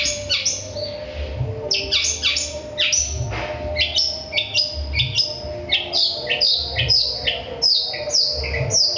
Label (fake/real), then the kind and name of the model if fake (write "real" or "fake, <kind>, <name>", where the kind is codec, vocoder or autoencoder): real